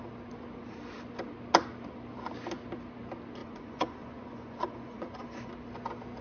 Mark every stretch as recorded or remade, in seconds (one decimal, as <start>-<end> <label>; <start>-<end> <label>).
0.0-3.4 recorded; 3.4-5.5 remade; 5.5-6.2 recorded